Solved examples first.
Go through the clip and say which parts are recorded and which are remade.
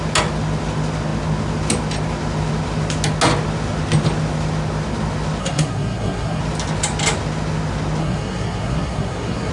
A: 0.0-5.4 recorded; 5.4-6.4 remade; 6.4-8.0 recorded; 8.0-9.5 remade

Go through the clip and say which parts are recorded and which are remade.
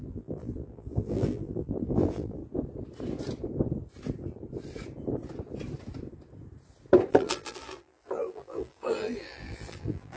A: 0.0-2.4 remade; 2.4-7.1 recorded; 7.1-10.2 remade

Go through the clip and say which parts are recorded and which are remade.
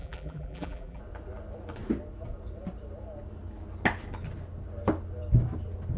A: 0.0-1.0 remade; 1.0-6.0 recorded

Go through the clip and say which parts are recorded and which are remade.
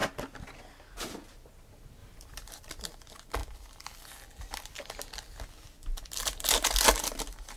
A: 0.0-2.0 recorded; 2.0-2.7 remade; 2.7-7.6 recorded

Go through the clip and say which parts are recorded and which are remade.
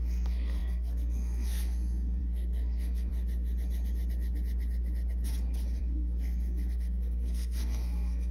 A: 0.0-3.1 remade; 3.1-5.8 recorded; 5.8-8.3 remade